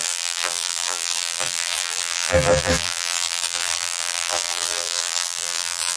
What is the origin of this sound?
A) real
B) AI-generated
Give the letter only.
B